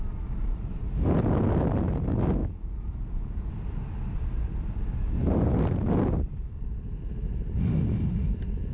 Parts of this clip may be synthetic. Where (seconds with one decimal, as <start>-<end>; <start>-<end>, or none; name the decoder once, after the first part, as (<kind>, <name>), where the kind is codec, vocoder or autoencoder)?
2.4-3.5 (vocoder, Vocos)